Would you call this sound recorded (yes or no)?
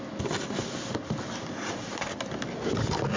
yes